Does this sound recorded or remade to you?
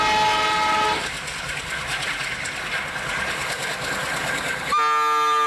recorded